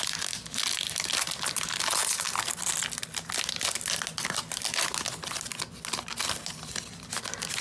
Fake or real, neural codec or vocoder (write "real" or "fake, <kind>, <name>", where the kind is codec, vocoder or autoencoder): real